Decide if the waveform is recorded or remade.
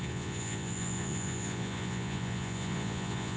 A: remade